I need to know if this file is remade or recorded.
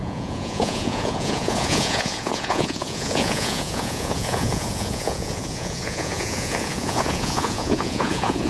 remade